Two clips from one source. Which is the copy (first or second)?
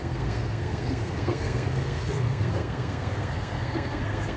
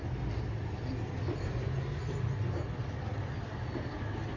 first